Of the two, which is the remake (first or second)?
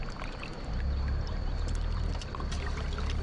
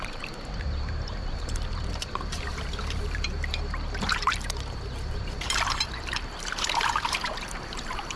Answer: second